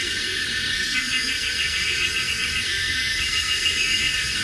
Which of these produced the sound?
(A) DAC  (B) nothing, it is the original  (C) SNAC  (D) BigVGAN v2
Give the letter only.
C